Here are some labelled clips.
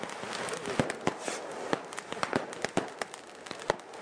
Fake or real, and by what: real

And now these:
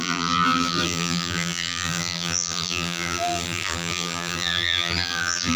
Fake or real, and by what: fake, vocoder, BigVGAN v2